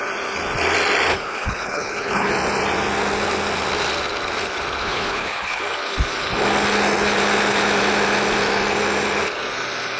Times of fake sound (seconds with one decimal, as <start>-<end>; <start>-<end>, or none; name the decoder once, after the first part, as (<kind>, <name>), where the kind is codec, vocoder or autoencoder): 1.1-2.3 (codec, HILCodec); 4.8-5.6